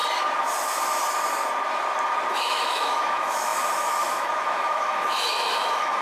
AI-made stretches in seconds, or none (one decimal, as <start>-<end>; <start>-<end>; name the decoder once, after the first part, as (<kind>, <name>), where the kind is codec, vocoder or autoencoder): 2.3-6.0 (autoencoder, DAC-VAE)